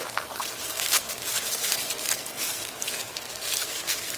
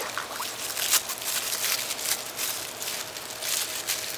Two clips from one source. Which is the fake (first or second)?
first